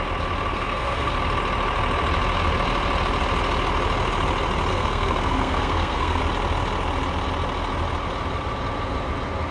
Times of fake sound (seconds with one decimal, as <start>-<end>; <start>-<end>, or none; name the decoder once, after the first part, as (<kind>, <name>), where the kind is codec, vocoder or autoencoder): 0.5-1.1 (codec, SNAC); 4.7-6.2